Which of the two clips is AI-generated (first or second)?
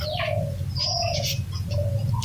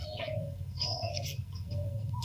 second